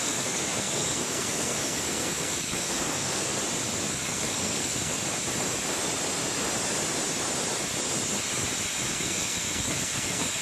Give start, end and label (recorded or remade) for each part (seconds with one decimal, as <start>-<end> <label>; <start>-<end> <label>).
0.0-3.4 remade; 3.4-3.9 recorded; 3.9-5.0 remade; 5.0-8.9 recorded; 8.9-10.4 remade

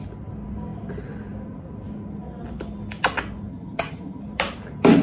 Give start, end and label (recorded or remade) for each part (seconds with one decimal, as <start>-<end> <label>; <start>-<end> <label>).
0.0-3.5 recorded; 3.5-4.2 remade; 4.2-5.0 recorded

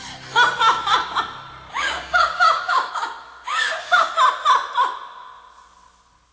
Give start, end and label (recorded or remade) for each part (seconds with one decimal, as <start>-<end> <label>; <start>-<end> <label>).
0.0-0.6 recorded; 0.6-1.2 remade; 1.2-1.7 recorded; 1.7-2.9 remade; 2.9-3.5 recorded; 3.5-4.1 remade; 4.1-6.3 recorded

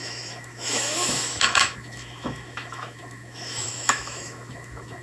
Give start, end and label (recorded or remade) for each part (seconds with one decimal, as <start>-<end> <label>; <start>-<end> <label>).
0.0-5.0 remade

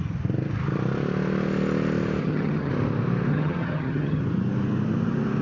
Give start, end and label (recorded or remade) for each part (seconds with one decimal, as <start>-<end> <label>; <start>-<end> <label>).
0.0-2.2 recorded; 2.2-2.7 remade; 2.7-3.3 recorded; 3.3-4.2 remade; 4.2-5.4 recorded

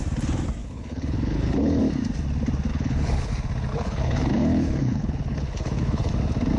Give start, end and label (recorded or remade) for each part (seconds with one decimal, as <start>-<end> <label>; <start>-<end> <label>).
0.0-0.6 recorded; 0.6-1.8 remade; 1.8-2.7 recorded; 2.7-3.3 remade; 3.3-3.7 recorded; 3.7-6.1 remade; 6.1-6.6 recorded